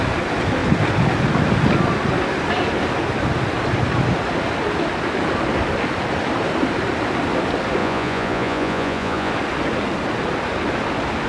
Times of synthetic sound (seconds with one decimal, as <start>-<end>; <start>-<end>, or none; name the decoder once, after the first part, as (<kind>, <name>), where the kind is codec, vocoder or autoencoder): 7.8-9.3 (vocoder, Vocos)